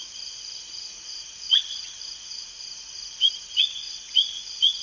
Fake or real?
fake